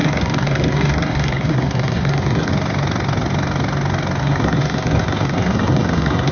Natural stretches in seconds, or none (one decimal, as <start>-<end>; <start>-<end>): 2.5-4.2